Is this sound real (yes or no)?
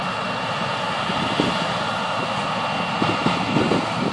no